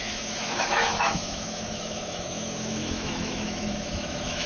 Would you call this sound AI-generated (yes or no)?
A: yes